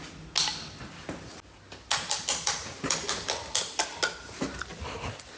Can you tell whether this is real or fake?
real